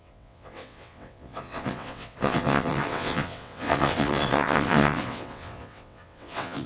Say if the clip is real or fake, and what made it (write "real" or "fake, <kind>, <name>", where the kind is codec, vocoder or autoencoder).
fake, vocoder, WaveNeXt